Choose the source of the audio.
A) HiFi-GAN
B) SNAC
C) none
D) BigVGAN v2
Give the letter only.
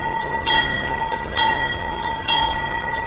A